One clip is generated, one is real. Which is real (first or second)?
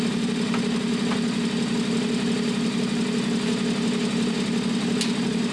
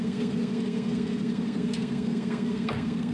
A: first